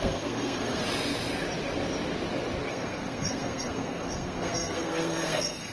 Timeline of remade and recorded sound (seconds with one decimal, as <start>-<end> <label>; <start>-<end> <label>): 0.0-0.8 remade; 0.8-2.7 recorded; 2.7-5.7 remade